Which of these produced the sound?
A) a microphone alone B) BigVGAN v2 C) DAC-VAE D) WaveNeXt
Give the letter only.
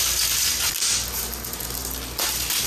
A